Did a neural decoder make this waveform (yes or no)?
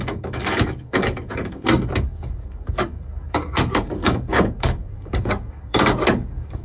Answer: yes